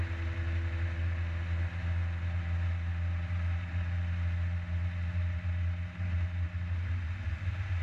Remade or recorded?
recorded